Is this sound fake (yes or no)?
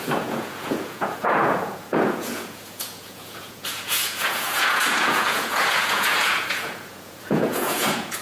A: yes